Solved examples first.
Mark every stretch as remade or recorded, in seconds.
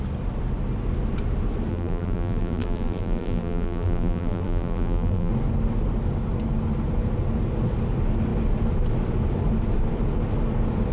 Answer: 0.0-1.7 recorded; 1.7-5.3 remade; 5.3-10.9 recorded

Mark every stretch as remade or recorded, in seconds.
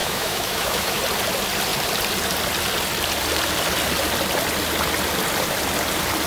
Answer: 0.0-1.0 remade; 1.0-6.3 recorded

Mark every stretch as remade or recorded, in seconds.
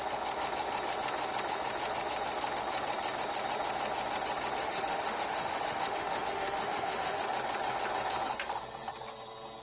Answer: 0.0-4.6 recorded; 4.6-7.2 remade; 7.2-9.6 recorded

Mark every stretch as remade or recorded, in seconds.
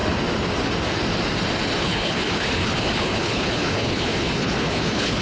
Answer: 0.0-1.8 recorded; 1.8-5.2 remade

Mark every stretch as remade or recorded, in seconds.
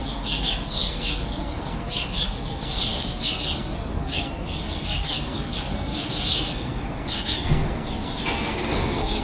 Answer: 0.0-9.2 remade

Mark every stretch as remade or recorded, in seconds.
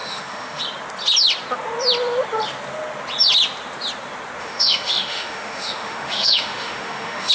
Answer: 0.0-0.6 remade; 0.6-4.4 recorded; 4.4-7.3 remade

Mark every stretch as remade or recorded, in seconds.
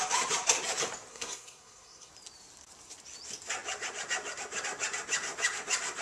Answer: 0.0-1.1 recorded; 1.1-2.1 remade; 2.1-6.0 recorded